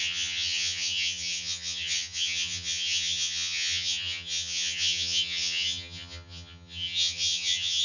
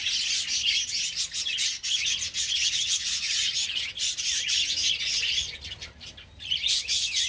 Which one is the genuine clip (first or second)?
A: second